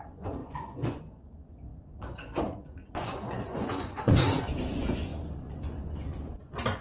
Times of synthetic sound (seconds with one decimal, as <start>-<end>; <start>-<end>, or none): 0.0-6.8

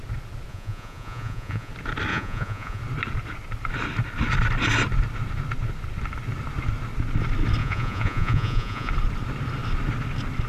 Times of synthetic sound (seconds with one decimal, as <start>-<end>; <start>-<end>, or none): 0.5-1.7; 2.1-2.8; 7.6-8.9

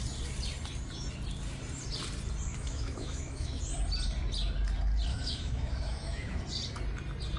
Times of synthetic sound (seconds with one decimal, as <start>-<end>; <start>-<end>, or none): 2.5-3.6; 5.1-6.4

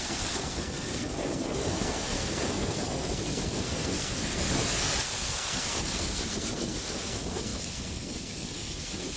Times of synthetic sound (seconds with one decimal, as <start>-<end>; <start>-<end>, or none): 0.0-9.2

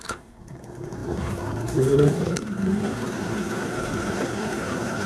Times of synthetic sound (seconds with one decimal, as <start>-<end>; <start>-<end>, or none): 0.0-5.1

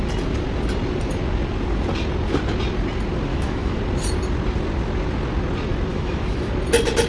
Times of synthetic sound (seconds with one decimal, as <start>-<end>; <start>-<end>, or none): 3.3-3.8; 5.9-6.5

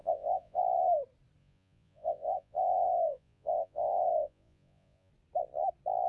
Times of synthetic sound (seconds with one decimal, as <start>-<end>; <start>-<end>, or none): 0.0-0.6; 1.4-5.1